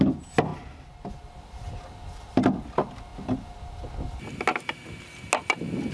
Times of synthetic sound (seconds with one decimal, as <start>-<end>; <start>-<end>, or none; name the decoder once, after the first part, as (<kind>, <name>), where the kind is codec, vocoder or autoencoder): none